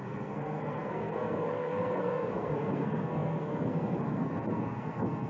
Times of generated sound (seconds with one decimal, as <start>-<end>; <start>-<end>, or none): 0.0-5.3